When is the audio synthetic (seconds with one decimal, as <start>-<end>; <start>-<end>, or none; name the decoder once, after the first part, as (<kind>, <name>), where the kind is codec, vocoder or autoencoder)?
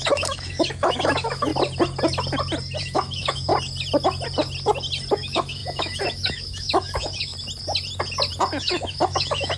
0.0-1.5 (autoencoder, DAC-VAE); 2.8-3.5; 5.1-7.3; 8.6-9.6